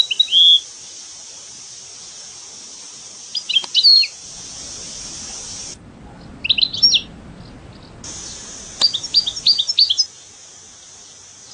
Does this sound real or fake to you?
real